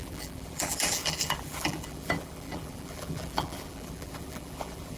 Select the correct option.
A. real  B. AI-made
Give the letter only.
B